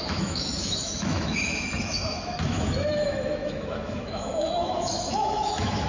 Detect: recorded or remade remade